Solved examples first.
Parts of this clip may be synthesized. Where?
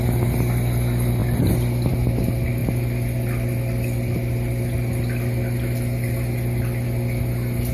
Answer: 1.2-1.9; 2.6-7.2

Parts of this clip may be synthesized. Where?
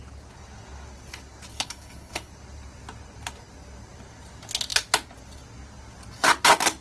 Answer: 1.5-2.3